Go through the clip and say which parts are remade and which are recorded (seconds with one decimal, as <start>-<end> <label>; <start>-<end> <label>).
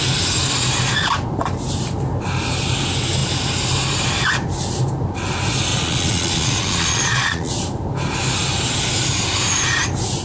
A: 0.0-5.7 recorded; 5.7-7.5 remade; 7.5-10.2 recorded